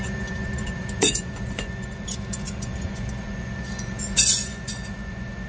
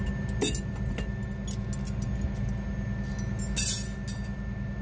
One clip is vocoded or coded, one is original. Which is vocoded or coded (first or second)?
first